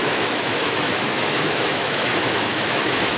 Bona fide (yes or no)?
no